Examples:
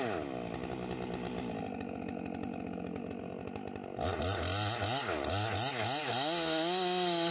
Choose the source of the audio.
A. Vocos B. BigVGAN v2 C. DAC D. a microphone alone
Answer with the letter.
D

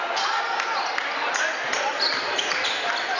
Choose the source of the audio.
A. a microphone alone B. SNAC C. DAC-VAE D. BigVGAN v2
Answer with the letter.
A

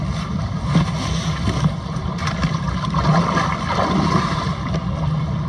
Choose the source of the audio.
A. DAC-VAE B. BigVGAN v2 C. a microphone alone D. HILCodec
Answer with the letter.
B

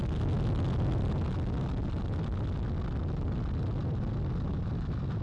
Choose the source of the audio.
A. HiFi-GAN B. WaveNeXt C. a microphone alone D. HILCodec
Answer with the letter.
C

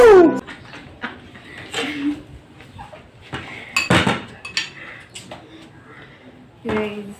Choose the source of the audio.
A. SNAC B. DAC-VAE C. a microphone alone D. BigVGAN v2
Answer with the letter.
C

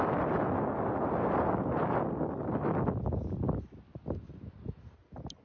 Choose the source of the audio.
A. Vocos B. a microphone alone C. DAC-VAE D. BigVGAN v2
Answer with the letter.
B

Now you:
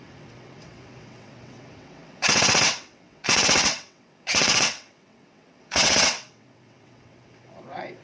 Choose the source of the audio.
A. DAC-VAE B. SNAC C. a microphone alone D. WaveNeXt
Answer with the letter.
D